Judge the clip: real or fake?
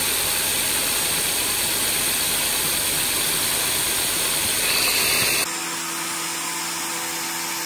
real